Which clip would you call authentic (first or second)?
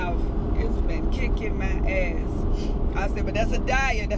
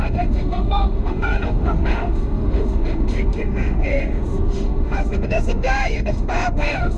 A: first